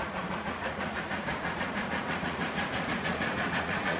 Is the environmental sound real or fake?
fake